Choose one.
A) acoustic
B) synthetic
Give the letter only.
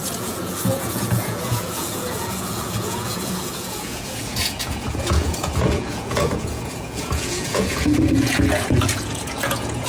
B